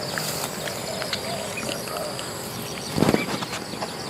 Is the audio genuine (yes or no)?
yes